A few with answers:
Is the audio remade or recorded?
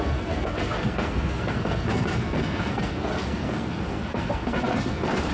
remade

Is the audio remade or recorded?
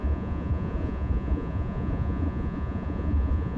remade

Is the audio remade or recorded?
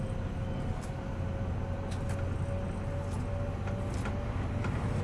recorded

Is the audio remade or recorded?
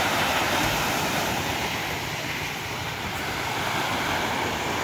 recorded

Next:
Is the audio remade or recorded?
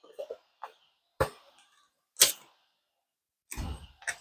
recorded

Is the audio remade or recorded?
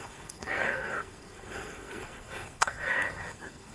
remade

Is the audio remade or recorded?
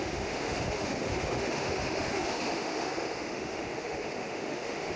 remade